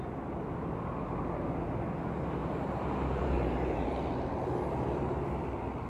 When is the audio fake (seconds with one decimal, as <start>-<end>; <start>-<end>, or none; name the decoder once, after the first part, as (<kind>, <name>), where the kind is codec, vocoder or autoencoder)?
2.4-4.3 (vocoder, BigVGAN v2)